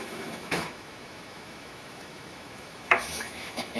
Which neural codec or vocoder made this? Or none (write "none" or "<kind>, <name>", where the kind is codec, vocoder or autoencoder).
autoencoder, DAC-VAE